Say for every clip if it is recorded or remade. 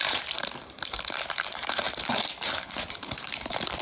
remade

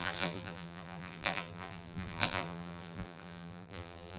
remade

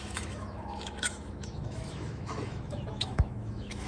remade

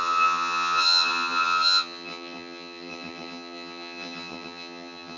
remade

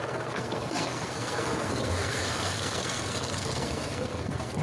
remade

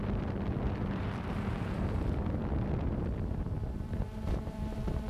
remade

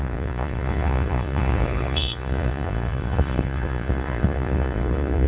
remade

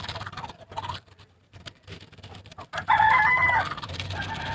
recorded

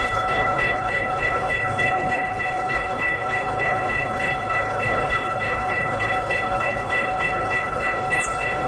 remade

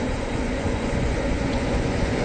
remade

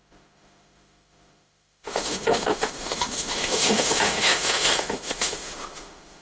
remade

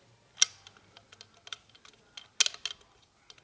recorded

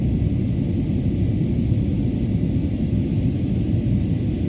recorded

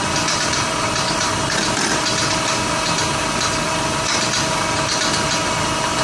recorded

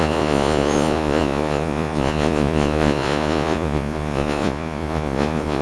remade